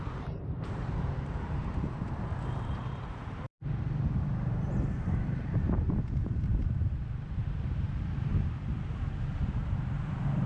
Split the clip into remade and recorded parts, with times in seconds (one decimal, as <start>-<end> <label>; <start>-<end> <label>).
0.0-8.3 remade; 8.3-9.5 recorded; 9.5-10.5 remade